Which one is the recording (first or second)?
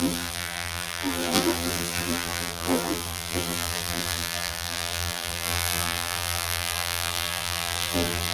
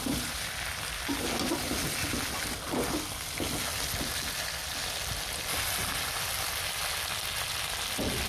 second